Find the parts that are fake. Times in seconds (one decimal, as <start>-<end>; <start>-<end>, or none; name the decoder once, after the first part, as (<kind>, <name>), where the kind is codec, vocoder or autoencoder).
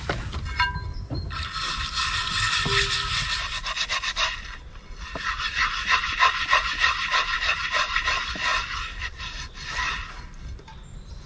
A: none